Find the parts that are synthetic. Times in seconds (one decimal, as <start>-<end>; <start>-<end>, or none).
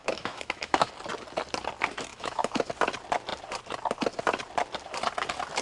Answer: 0.0-0.9; 2.1-2.7